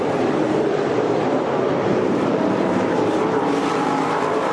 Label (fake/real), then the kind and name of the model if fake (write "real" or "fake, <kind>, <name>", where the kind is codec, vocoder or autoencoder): fake, vocoder, BigVGAN v2